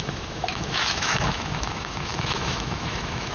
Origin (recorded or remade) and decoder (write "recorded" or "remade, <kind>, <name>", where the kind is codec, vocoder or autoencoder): remade, autoencoder, DAC-VAE